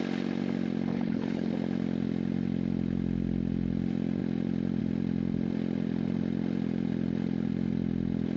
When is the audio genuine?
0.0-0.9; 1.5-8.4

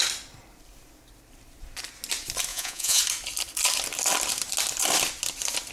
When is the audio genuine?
0.0-2.5; 3.0-5.7